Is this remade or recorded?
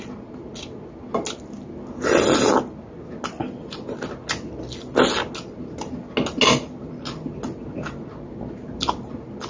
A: recorded